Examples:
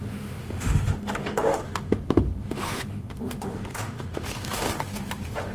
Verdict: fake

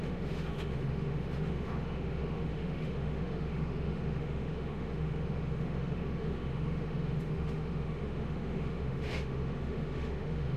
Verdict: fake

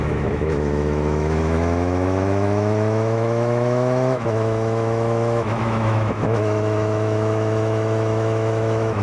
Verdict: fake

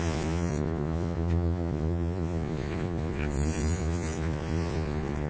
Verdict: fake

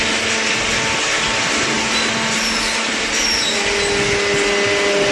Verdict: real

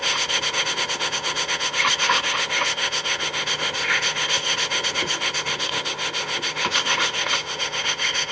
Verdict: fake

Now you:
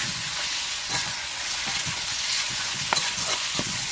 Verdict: fake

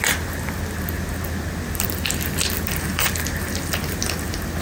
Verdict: real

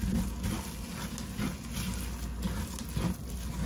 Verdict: real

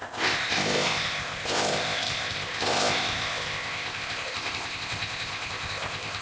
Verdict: fake